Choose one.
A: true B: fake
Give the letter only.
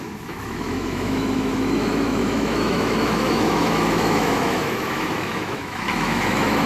B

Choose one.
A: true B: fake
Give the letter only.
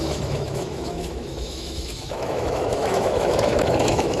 B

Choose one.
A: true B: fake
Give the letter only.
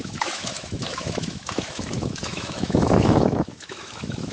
B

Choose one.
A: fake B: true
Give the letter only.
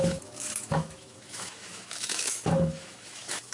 A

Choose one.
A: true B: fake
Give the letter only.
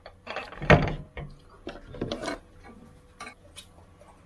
A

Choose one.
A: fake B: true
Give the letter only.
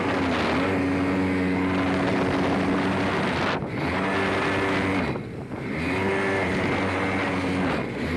B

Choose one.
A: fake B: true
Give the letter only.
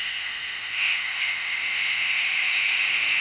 A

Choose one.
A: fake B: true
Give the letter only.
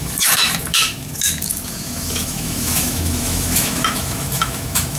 A